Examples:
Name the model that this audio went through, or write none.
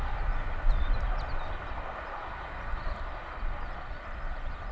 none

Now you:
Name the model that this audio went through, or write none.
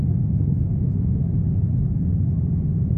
none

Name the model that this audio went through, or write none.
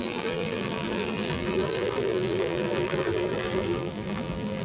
vocoder, BigVGAN v2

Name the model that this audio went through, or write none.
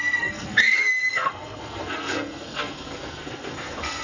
codec, SNAC